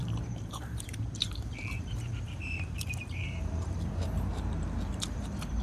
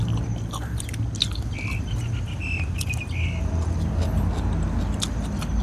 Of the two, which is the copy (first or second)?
first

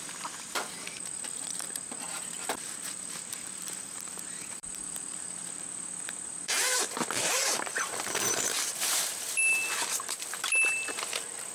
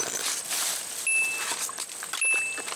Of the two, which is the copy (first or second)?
first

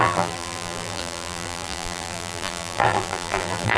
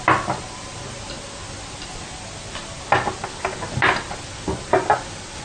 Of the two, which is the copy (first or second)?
first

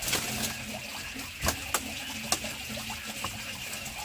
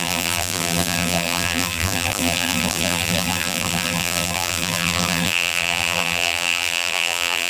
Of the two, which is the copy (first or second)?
second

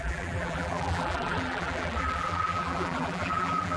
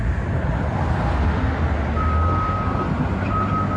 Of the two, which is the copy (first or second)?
first